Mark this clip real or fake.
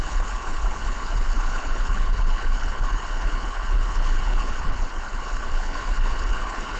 fake